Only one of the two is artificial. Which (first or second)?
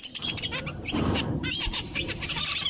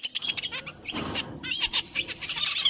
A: first